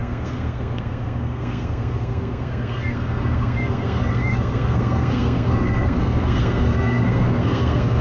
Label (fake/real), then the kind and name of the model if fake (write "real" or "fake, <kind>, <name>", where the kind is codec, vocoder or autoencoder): fake, codec, SNAC